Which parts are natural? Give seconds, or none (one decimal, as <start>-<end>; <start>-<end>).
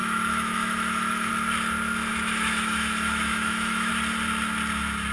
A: 1.3-2.1; 3.9-5.1